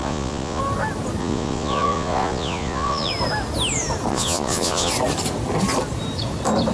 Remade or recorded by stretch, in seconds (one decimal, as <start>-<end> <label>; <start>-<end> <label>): 0.0-0.6 remade; 0.6-1.2 recorded; 1.2-3.1 remade; 3.1-4.1 recorded; 4.1-4.9 remade; 4.9-6.7 recorded